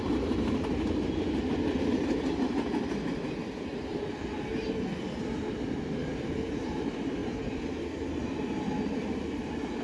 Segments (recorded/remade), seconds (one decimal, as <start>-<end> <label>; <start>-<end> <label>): 0.0-9.8 recorded